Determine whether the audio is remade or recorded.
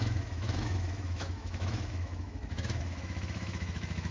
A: remade